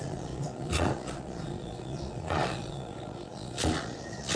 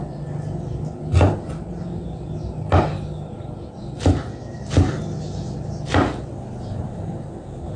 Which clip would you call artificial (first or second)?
first